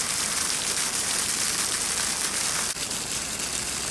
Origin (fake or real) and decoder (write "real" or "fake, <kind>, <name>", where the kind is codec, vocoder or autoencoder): real